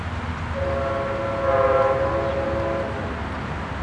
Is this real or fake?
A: real